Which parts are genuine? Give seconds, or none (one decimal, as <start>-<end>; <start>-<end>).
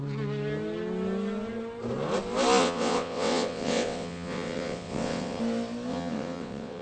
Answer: 0.0-2.6; 5.4-5.9